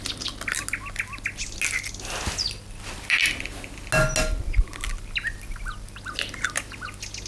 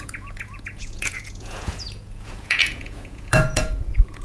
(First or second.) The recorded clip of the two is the first